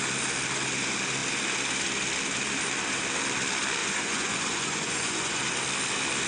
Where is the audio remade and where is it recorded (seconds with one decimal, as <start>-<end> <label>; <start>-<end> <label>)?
0.0-3.8 recorded; 3.8-5.4 remade; 5.4-6.3 recorded